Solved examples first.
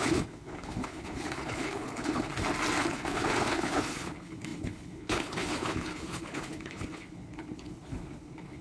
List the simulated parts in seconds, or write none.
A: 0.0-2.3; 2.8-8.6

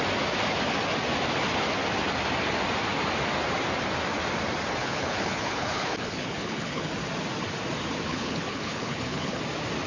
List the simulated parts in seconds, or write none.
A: 4.8-6.9; 8.1-9.4

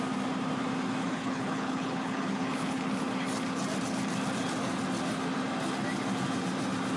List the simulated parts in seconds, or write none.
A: 1.0-2.9

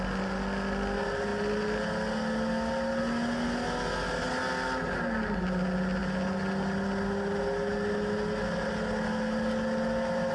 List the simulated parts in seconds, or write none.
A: none

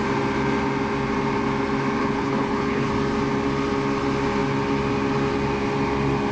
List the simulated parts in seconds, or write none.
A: 2.0-2.9

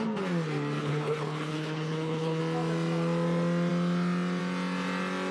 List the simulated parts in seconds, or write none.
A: 0.8-2.4

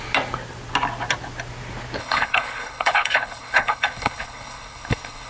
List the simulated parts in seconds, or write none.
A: 2.0-5.3

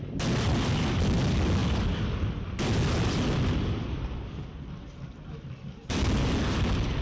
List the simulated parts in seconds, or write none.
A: none